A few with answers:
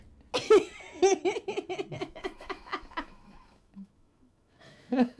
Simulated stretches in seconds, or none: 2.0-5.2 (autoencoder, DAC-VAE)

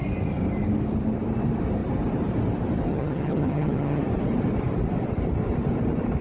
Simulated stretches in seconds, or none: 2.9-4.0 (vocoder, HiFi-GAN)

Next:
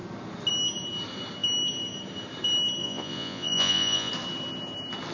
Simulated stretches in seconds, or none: 2.8-4.1 (vocoder, Vocos)

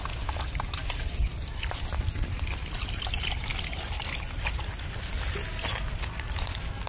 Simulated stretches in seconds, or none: none

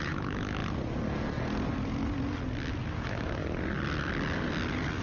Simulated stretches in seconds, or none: 0.0-0.6 (autoencoder, DAC-VAE); 2.8-3.4

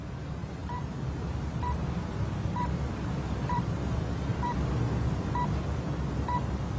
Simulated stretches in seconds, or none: 0.6-4.7 (vocoder, BigVGAN v2)